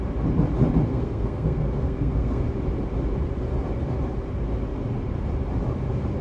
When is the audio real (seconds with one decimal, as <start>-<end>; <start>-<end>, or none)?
0.0-0.9; 2.4-6.2